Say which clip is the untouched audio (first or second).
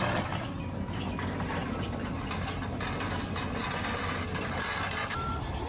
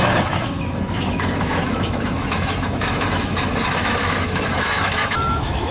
first